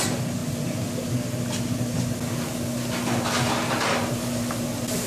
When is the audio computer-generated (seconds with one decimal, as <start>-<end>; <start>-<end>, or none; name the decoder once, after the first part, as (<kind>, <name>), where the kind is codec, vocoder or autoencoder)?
none